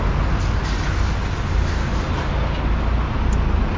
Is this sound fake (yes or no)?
no